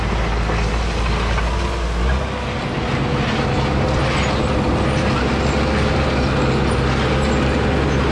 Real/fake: real